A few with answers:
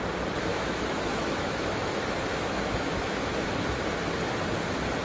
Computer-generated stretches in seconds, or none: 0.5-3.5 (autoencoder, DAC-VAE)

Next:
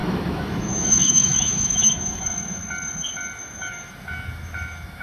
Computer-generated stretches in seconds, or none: 0.0-2.6 (autoencoder, DAC-VAE); 3.4-5.0

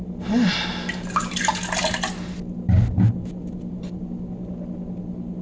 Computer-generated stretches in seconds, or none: none